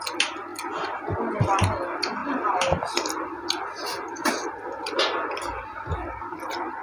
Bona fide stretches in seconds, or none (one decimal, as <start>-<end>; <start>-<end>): 0.0-2.2; 3.3-6.8